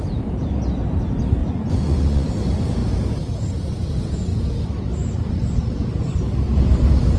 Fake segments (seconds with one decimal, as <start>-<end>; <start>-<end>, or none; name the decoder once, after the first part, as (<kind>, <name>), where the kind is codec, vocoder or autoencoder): 1.4-2.3 (vocoder, Vocos)